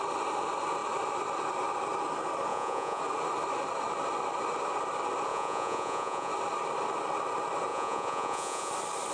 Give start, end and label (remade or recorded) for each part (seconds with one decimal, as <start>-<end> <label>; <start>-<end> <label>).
0.0-2.5 recorded; 2.5-3.0 remade; 3.0-5.3 recorded; 5.3-6.3 remade; 6.3-7.7 recorded; 7.7-8.7 remade; 8.7-9.1 recorded